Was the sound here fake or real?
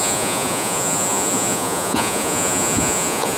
fake